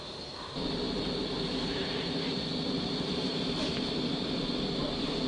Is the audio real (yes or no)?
yes